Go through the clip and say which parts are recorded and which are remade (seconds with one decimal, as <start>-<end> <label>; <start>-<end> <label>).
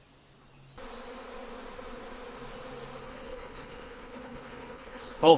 0.0-3.0 recorded; 3.0-5.4 remade